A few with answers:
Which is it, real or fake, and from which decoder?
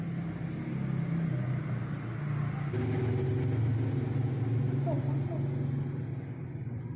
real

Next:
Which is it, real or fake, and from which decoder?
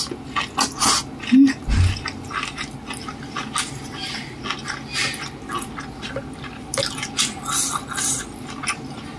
real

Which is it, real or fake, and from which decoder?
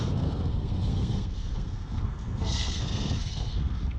fake, codec, SNAC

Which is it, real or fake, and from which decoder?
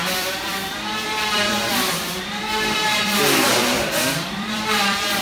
fake, vocoder, BigVGAN v2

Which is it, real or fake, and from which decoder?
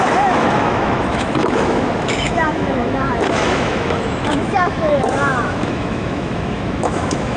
fake, autoencoder, DAC-VAE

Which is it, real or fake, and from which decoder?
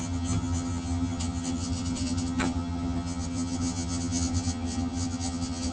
fake, vocoder, HiFi-GAN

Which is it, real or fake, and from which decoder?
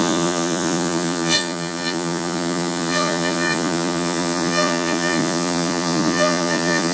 fake, vocoder, Vocos